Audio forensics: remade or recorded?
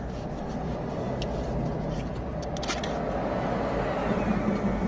recorded